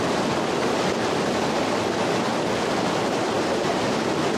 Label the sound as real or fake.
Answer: real